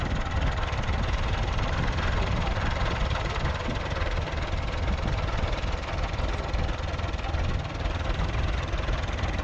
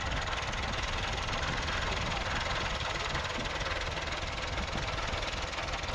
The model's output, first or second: first